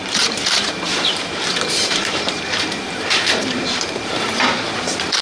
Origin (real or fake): fake